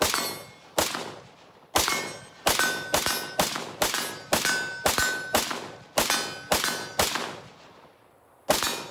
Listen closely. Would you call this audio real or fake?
real